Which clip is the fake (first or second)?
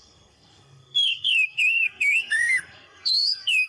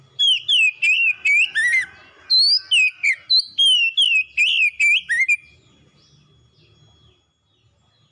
first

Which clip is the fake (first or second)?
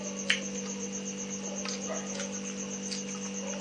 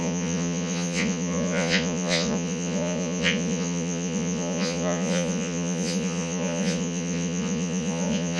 second